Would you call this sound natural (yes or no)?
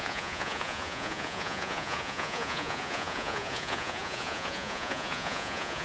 no